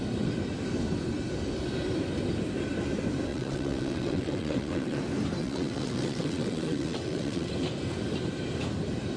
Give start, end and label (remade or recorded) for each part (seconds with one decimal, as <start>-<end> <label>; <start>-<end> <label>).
0.0-3.3 recorded; 3.3-5.0 remade; 5.0-5.4 recorded; 5.4-7.5 remade; 7.5-9.2 recorded